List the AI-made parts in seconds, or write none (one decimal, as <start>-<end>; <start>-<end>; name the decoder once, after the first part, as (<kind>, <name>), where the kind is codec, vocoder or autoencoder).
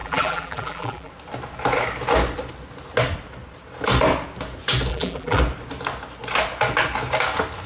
0.0-1.1 (vocoder, BigVGAN v2); 4.9-5.4